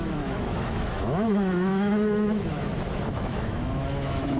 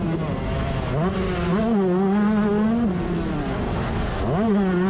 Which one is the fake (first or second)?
first